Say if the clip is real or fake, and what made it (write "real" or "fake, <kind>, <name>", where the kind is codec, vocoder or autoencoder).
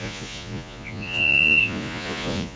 fake, vocoder, Vocos